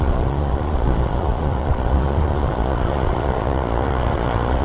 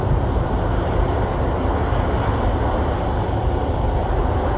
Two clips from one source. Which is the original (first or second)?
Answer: second